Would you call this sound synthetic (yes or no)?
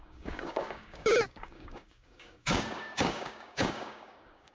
yes